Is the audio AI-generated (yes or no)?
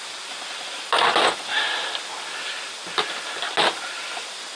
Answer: no